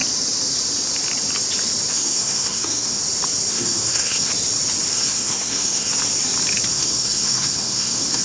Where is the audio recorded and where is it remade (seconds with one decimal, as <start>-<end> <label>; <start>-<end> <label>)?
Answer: 0.0-1.9 recorded; 1.9-3.0 remade; 3.0-3.5 recorded; 3.5-4.3 remade; 4.3-4.9 recorded; 4.9-5.9 remade; 5.9-6.7 recorded; 6.7-8.2 remade